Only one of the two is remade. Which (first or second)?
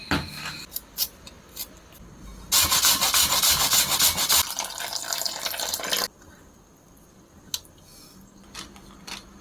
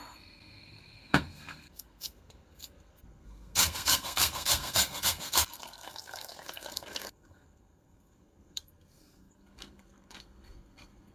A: second